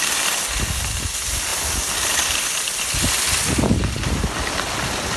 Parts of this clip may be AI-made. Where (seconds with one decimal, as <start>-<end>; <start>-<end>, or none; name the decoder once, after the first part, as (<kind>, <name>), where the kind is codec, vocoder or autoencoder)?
none